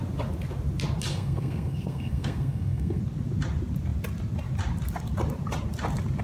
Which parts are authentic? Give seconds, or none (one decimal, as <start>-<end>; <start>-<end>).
0.0-1.1; 3.0-6.2